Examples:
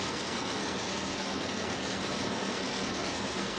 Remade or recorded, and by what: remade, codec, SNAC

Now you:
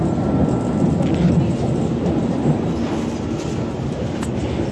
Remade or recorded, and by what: recorded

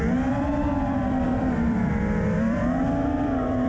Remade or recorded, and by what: remade, vocoder, BigVGAN v2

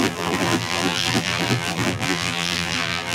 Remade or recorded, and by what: remade, vocoder, BigVGAN v2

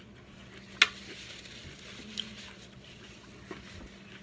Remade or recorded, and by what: recorded